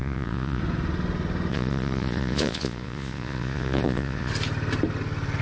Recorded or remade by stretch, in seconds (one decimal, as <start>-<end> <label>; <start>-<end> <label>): 0.0-0.6 remade; 0.6-1.5 recorded; 1.5-4.3 remade; 4.3-5.4 recorded